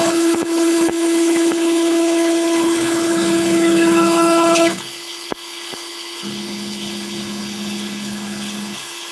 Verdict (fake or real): fake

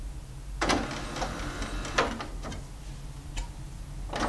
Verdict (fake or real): real